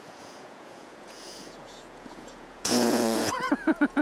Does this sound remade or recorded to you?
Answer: remade